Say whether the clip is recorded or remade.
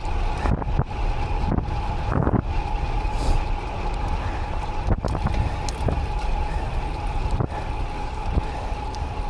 recorded